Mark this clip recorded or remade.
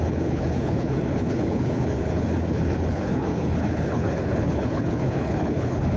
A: remade